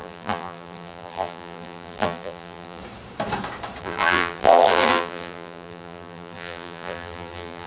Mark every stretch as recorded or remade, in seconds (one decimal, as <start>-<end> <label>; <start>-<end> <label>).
0.0-2.8 remade; 2.8-3.8 recorded; 3.8-7.7 remade